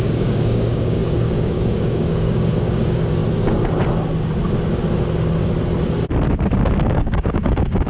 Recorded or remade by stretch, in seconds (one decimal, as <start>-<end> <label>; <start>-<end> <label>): 0.0-3.2 remade; 3.2-6.8 recorded; 6.8-7.9 remade